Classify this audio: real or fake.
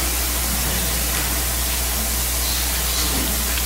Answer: real